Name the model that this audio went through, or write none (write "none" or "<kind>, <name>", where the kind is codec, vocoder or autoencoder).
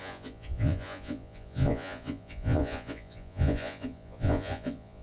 vocoder, Vocos